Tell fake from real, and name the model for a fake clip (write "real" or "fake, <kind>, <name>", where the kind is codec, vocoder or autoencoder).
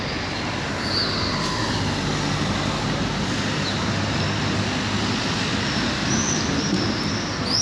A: real